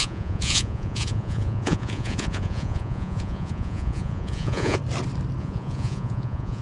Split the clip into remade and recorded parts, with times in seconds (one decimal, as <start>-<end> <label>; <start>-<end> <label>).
0.0-4.8 remade; 4.8-5.4 recorded; 5.4-6.6 remade